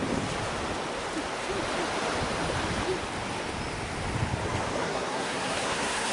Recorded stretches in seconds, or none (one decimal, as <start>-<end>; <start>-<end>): 0.0-4.8

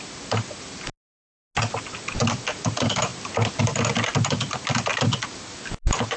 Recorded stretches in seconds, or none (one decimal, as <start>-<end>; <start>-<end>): 0.0-6.2

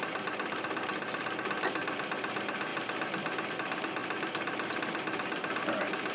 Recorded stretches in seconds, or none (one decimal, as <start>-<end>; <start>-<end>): 0.0-6.1

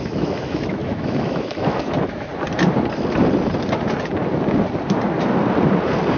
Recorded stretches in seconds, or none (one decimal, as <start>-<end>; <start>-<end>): 2.3-6.2

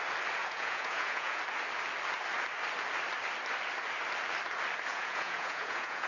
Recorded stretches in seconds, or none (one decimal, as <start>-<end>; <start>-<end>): 0.0-0.4; 1.4-4.9

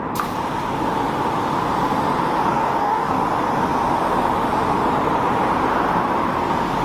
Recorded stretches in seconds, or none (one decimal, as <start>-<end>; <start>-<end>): 0.0-2.5; 3.1-6.8

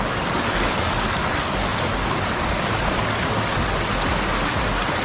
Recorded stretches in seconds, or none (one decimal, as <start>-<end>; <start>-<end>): 0.0-5.0